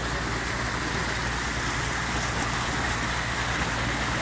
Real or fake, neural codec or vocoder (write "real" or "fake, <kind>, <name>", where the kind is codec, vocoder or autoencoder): real